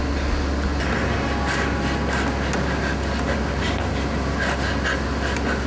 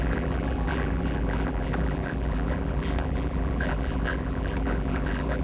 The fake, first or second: second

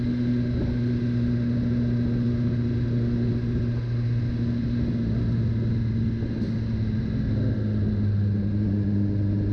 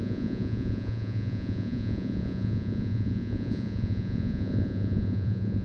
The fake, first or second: second